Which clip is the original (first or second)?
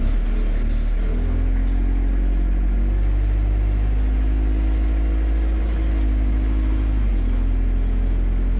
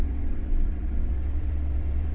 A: first